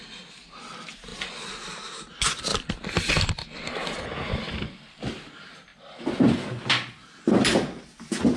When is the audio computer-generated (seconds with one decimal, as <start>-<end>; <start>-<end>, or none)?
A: 2.5-4.0; 5.7-6.7